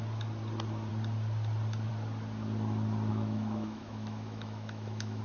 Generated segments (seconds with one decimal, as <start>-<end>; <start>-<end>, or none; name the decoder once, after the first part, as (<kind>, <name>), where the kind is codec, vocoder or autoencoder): 3.1-5.2 (autoencoder, DAC-VAE)